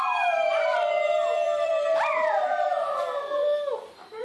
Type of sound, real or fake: fake